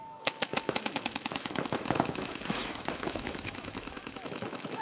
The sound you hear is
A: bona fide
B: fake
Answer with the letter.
B